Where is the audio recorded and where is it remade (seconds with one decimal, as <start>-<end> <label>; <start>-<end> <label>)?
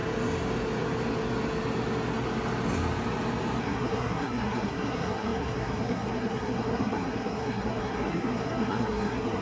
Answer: 0.0-3.6 recorded; 3.6-9.4 remade